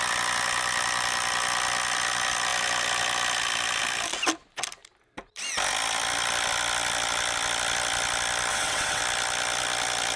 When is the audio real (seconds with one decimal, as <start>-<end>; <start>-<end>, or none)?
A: 0.0-8.5; 9.0-10.2